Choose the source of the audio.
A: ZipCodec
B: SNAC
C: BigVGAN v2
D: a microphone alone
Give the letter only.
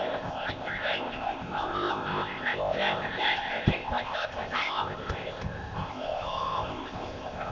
A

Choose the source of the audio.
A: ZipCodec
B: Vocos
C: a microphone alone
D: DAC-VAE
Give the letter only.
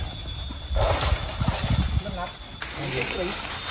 C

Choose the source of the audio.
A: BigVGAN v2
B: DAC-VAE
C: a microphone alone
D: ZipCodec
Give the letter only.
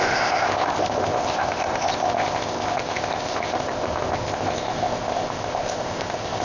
D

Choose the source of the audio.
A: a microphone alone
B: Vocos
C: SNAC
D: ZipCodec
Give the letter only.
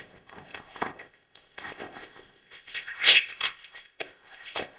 D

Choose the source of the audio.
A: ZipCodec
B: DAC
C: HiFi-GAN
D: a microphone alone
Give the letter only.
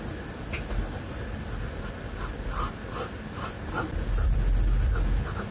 D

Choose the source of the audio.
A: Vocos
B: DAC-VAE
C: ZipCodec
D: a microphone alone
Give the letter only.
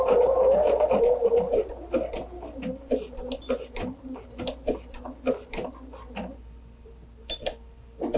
D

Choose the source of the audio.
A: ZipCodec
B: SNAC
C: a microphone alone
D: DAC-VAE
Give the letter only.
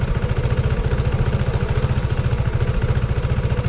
C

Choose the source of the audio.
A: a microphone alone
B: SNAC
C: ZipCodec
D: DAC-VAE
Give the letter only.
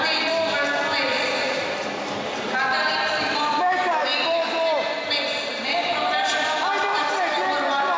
A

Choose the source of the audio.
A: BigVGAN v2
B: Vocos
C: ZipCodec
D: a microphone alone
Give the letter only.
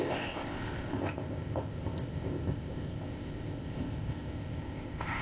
C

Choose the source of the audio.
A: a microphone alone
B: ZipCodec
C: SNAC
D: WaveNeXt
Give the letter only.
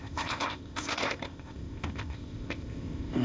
B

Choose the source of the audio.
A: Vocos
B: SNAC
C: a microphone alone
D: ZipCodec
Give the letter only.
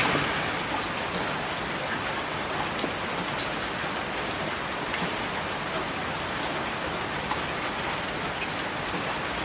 C